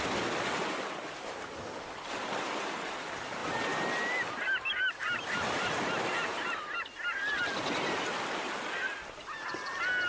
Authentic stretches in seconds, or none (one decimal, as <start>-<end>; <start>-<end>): 0.0-10.1

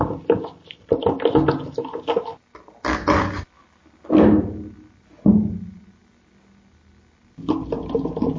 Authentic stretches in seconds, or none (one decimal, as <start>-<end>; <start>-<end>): 0.0-2.9; 3.4-8.4